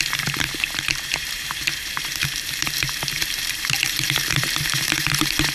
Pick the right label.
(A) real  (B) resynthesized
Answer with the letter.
B